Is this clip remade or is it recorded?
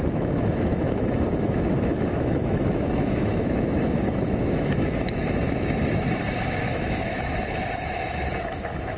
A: remade